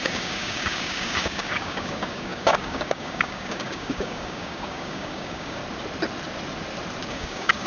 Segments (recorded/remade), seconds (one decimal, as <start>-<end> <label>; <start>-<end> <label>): 0.0-5.6 remade; 5.6-7.1 recorded; 7.1-7.7 remade